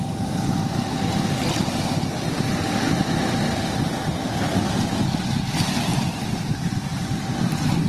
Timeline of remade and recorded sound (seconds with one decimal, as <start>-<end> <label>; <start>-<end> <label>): 0.0-5.9 recorded; 5.9-7.0 remade; 7.0-7.9 recorded